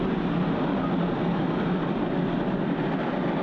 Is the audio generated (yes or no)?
no